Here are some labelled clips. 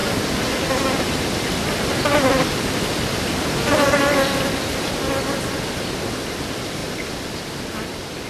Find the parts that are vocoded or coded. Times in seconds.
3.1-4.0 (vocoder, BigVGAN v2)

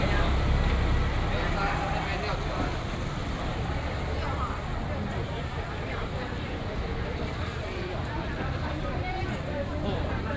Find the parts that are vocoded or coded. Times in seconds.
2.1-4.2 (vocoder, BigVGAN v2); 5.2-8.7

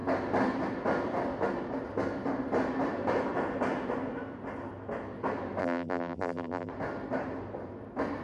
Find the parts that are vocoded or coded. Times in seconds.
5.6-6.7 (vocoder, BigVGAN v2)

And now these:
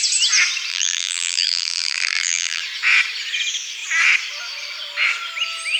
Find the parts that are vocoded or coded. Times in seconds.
0.7-2.6 (vocoder, BigVGAN v2)

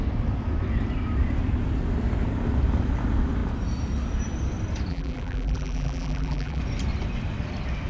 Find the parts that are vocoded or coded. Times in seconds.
4.9-6.6 (vocoder, BigVGAN v2)

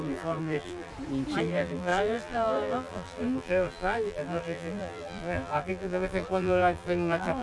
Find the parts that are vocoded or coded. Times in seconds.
0.0-0.9 (vocoder, BigVGAN v2); 1.4-7.4

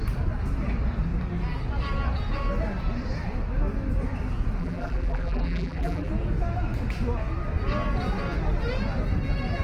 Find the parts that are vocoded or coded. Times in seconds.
4.6-6.1 (vocoder, BigVGAN v2)